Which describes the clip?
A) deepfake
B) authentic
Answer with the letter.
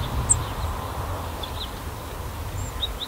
B